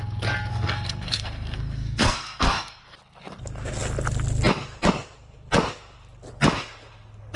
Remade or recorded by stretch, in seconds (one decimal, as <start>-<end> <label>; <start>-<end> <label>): 0.0-0.5 recorded; 0.5-2.8 remade; 2.8-7.4 recorded